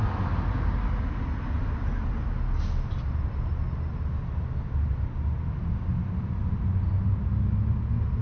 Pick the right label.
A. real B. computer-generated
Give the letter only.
A